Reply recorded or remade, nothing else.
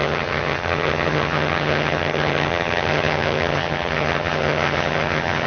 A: remade